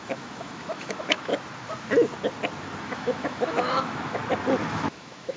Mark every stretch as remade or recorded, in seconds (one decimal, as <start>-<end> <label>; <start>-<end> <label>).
0.0-1.3 remade; 1.3-2.8 recorded; 2.8-4.2 remade; 4.2-4.7 recorded; 4.7-5.4 remade